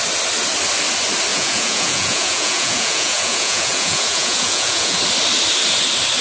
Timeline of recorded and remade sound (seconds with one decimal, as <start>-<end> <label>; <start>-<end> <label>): 0.0-1.3 recorded; 1.3-5.0 remade; 5.0-6.2 recorded